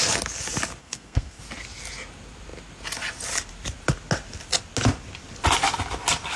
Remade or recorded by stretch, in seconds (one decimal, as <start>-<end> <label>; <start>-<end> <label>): 0.0-0.8 recorded; 0.8-1.4 remade; 1.4-6.4 recorded